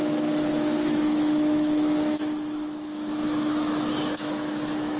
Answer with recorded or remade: remade